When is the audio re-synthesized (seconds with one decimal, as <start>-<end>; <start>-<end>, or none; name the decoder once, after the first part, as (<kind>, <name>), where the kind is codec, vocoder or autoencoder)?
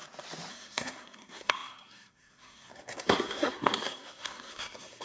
0.5-5.0 (codec, SNAC)